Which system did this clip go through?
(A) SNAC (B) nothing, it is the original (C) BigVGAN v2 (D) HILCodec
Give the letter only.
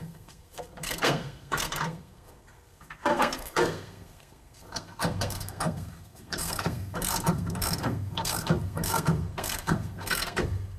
A